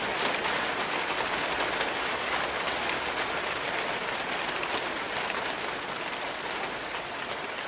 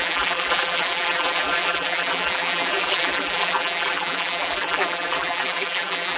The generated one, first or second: second